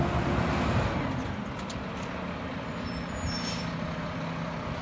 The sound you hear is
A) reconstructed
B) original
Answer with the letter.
B